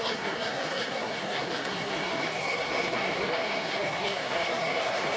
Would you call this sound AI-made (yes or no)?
yes